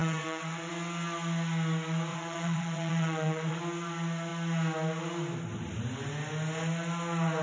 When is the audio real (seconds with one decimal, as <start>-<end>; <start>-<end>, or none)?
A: 0.7-2.1; 3.6-7.4